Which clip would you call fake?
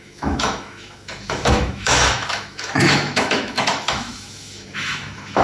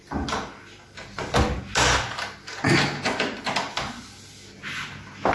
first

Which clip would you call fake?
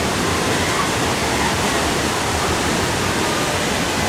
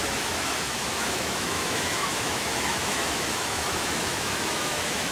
second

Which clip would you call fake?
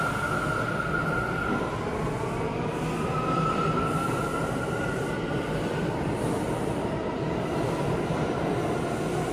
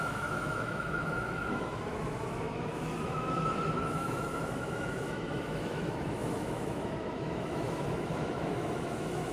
second